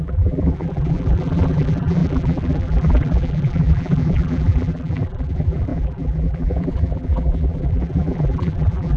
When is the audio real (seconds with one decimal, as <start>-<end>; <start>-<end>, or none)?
none